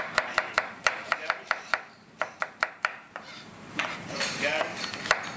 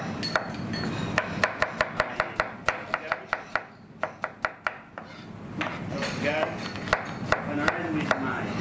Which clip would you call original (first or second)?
second